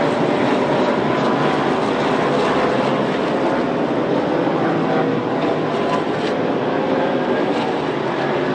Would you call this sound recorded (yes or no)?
yes